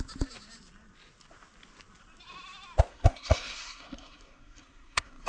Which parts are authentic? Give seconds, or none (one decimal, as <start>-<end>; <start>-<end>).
0.0-2.9